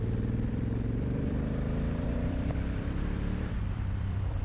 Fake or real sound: fake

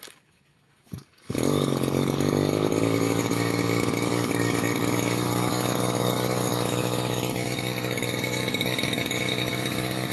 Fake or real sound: fake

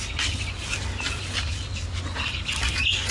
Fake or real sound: real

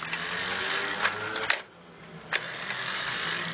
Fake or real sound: real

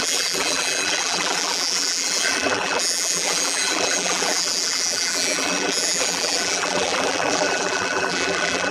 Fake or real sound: fake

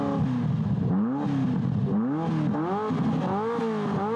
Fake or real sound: real